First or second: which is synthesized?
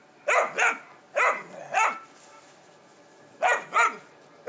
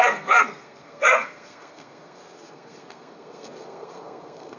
second